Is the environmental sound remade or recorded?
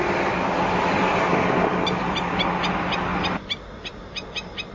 recorded